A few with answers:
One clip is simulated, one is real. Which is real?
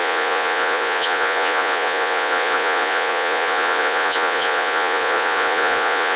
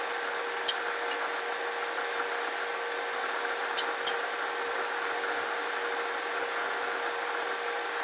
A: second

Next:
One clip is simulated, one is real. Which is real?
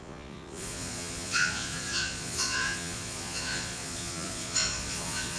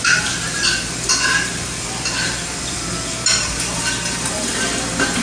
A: second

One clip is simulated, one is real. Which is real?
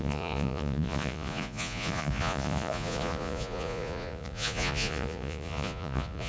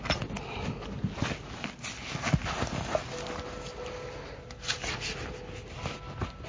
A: second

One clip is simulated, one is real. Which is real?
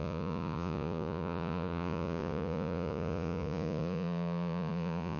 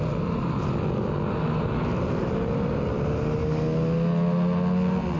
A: second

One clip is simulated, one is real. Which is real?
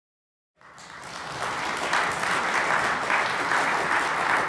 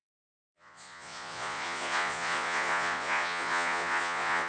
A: first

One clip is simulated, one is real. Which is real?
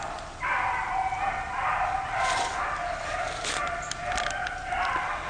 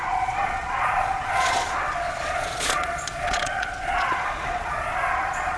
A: first